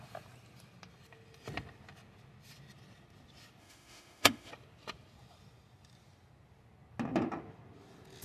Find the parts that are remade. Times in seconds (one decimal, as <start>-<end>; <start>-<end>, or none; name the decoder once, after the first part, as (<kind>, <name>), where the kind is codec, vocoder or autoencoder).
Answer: 3.6-4.5 (autoencoder, DAC-VAE)